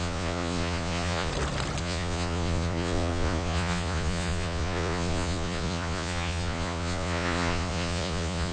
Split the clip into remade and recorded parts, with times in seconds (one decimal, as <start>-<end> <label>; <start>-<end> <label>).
0.0-1.3 remade; 1.3-1.8 recorded; 1.8-8.5 remade